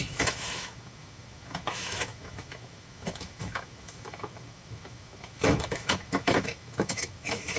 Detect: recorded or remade remade